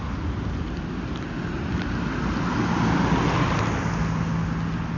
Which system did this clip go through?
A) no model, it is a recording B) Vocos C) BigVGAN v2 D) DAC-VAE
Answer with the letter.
A